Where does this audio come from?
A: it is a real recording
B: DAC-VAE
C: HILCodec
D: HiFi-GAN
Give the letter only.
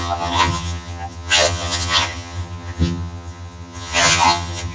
D